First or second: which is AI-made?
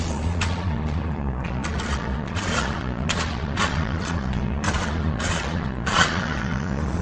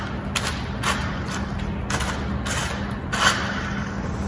first